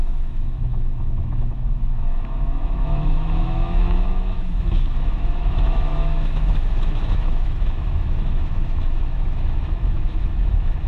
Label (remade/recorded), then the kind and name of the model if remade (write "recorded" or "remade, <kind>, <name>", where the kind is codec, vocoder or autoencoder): remade, autoencoder, DAC-VAE